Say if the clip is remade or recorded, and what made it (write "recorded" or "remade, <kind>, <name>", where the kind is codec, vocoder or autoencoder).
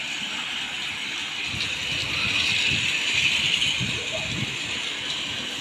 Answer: recorded